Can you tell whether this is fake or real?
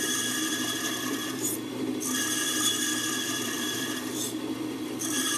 fake